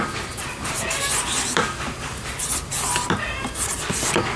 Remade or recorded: recorded